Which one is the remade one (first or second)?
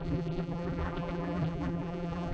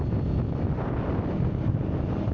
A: first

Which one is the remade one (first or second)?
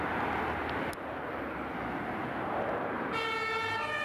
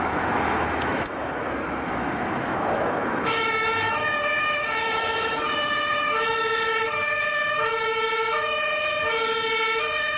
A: second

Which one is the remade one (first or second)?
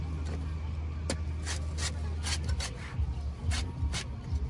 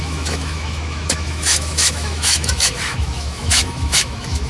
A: second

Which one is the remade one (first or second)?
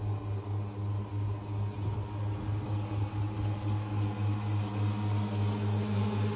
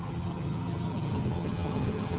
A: second